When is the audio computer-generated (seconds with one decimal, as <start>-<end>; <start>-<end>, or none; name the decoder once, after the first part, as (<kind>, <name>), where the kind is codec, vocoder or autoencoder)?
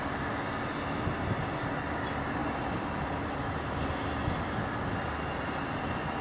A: none